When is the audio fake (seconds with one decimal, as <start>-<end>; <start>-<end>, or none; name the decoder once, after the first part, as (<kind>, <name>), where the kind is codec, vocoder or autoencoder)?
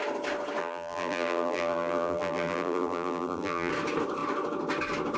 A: 0.6-3.7 (vocoder, BigVGAN v2)